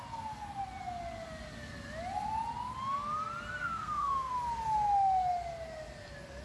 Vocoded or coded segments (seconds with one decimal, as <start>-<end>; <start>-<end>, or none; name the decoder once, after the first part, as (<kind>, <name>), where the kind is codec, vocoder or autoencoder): 3.6-4.3 (codec, SNAC)